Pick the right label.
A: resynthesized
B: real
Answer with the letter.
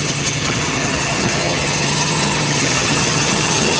A